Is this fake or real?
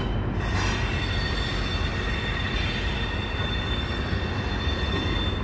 real